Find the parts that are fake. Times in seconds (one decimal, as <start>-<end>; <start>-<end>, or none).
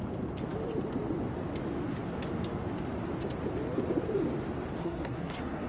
4.8-5.7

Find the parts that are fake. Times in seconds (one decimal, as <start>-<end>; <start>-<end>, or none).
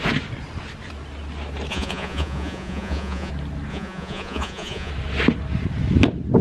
1.7-3.3; 3.7-4.9